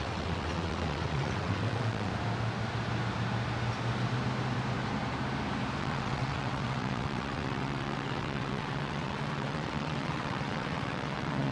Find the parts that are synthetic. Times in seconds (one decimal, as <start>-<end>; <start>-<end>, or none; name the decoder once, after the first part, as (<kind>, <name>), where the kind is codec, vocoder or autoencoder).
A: 0.0-2.1 (vocoder, WaveNeXt); 5.8-11.5